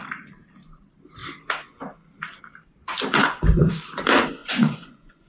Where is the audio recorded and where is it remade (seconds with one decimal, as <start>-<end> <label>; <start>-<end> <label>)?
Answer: 0.0-3.2 recorded; 3.2-3.7 remade; 3.7-4.4 recorded; 4.4-5.3 remade

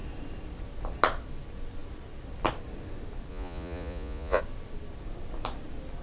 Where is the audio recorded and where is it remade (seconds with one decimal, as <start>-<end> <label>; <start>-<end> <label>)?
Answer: 0.0-3.3 recorded; 3.3-4.4 remade; 4.4-6.0 recorded